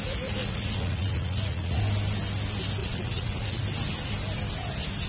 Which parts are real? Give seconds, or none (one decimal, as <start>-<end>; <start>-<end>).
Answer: 0.0-0.4; 1.8-2.8; 3.6-5.1